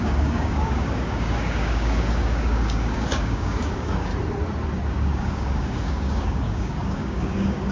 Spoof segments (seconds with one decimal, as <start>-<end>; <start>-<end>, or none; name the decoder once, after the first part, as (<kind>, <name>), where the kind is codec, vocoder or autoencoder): 0.0-4.1 (codec, DAC); 4.9-7.7